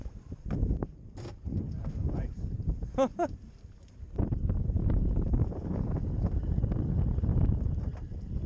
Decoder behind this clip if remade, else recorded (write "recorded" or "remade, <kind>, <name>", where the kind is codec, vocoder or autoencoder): recorded